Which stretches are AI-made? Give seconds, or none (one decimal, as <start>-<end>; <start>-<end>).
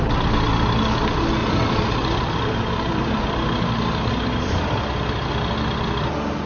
1.4-5.3